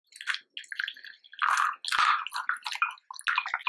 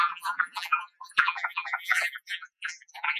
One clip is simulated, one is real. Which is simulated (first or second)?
second